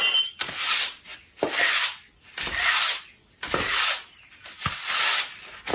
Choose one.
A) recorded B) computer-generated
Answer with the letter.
A